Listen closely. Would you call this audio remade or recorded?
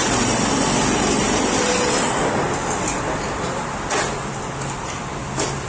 recorded